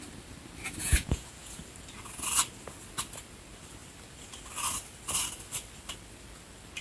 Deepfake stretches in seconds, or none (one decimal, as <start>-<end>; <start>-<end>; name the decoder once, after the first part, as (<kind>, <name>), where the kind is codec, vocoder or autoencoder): 0.8-1.6 (vocoder, Vocos)